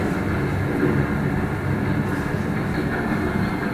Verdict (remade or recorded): recorded